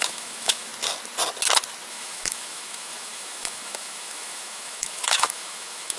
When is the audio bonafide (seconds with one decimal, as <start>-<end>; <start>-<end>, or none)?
0.7-1.9